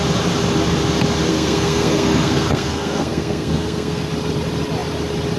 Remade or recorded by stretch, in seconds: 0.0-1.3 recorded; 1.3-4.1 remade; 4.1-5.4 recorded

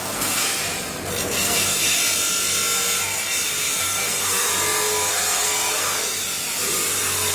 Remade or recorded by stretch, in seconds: 0.0-0.6 remade; 0.6-1.3 recorded; 1.3-2.0 remade; 2.0-3.8 recorded; 3.8-4.5 remade; 4.5-5.1 recorded; 5.1-6.2 remade; 6.2-7.3 recorded